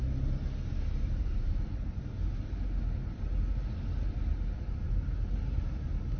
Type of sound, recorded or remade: recorded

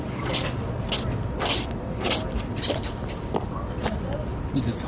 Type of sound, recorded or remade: recorded